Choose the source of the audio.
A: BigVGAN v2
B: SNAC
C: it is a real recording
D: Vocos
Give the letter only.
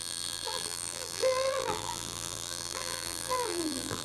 A